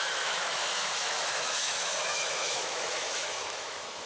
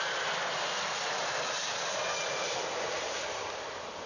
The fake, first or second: first